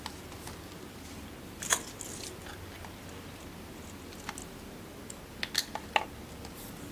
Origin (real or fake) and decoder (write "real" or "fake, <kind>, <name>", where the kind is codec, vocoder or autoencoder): real